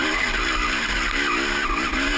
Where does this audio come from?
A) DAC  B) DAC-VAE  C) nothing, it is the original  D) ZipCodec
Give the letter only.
C